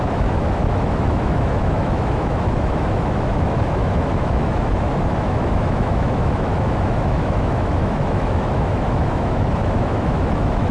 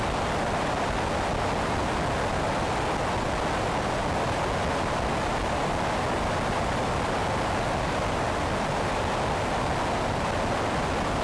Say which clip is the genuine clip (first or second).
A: second